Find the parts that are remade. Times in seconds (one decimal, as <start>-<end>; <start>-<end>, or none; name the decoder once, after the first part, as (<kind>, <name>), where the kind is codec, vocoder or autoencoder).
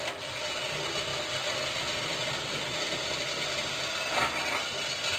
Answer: none